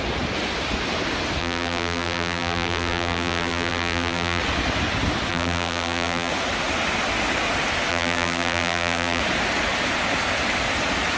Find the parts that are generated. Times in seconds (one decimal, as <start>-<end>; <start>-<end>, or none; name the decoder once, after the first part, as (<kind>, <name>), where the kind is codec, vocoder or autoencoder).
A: 1.4-4.4 (vocoder, BigVGAN v2); 5.3-6.3; 7.9-9.2

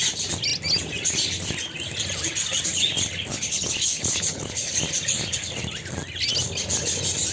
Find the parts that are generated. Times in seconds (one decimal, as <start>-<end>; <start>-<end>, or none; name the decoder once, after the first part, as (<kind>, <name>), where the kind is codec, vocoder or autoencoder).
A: 3.3-4.7 (codec, HILCodec)